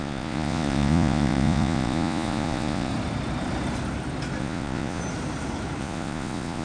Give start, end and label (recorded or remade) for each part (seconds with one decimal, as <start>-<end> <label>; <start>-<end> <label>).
0.0-2.9 remade; 2.9-4.4 recorded; 4.4-5.0 remade; 5.0-5.8 recorded; 5.8-6.6 remade

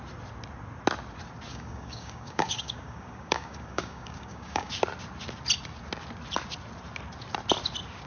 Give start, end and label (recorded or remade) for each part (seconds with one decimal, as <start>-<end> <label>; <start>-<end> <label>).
0.0-1.5 recorded; 1.5-4.7 remade; 4.7-8.1 recorded

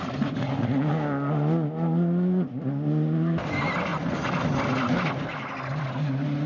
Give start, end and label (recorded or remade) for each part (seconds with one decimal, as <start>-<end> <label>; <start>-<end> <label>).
0.0-6.5 recorded